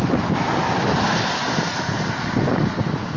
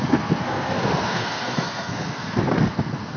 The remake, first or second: second